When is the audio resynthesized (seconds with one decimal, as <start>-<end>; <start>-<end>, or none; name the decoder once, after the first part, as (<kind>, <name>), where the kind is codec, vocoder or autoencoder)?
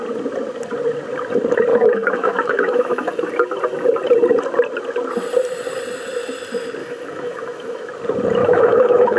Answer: 1.7-3.1 (autoencoder, DAC-VAE); 6.8-7.9; 8.4-9.2